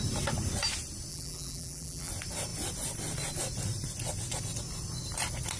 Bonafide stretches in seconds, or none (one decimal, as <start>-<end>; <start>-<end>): 0.0-1.1; 2.1-5.6